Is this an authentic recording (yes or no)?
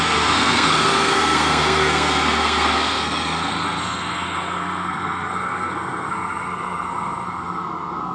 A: no